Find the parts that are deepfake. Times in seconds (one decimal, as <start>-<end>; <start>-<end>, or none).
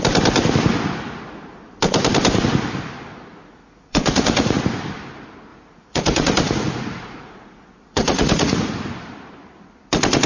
3.4-4.6; 5.5-8.7